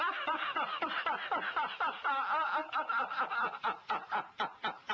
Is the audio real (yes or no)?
yes